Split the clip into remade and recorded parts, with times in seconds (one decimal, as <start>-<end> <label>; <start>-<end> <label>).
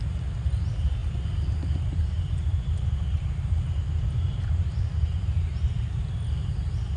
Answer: 0.0-2.5 recorded; 2.5-5.8 remade; 5.8-7.0 recorded